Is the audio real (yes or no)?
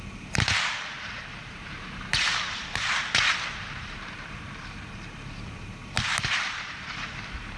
no